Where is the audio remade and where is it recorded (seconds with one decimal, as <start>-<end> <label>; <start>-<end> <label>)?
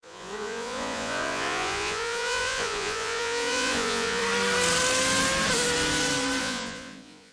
0.0-4.2 remade; 4.2-6.4 recorded; 6.4-7.3 remade